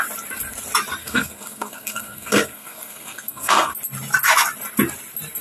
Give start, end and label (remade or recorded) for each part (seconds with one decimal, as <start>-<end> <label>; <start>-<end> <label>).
0.0-1.0 recorded; 1.0-3.7 remade; 3.7-5.4 recorded